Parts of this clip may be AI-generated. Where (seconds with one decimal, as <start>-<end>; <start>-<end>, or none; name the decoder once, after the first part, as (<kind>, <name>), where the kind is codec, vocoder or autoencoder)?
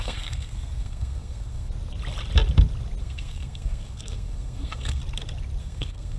0.0-1.7 (codec, SNAC); 3.0-5.0; 5.6-6.2